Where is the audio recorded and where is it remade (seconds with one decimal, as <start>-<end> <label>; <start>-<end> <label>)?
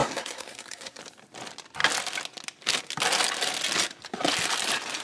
0.0-1.0 remade; 1.0-5.0 recorded